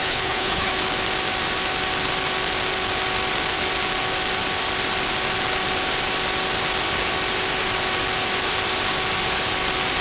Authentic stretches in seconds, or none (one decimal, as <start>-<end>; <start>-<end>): 0.7-10.0